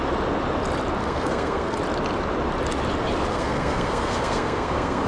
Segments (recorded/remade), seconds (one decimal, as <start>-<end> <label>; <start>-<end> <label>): 0.0-1.0 recorded; 1.0-1.8 remade; 1.8-3.3 recorded; 3.3-5.1 remade